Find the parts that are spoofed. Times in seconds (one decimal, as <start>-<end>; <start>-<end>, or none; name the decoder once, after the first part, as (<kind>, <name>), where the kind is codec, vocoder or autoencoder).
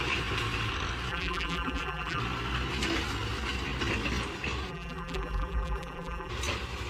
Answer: 1.1-2.2 (vocoder, BigVGAN v2); 4.7-6.3